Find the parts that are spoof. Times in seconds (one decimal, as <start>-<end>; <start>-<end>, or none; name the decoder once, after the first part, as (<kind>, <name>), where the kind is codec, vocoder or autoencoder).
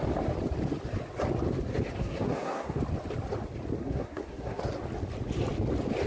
2.0-2.8 (codec, SNAC); 3.8-4.6